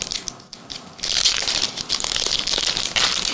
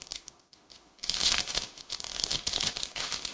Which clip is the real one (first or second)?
first